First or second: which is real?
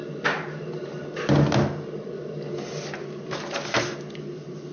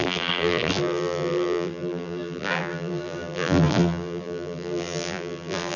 first